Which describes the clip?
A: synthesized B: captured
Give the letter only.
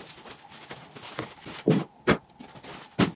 B